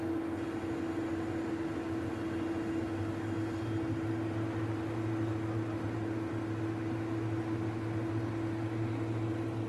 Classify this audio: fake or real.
real